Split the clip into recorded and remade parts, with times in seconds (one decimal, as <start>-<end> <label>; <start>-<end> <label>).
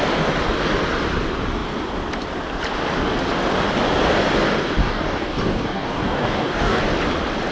0.0-4.8 recorded; 4.8-6.8 remade; 6.8-7.5 recorded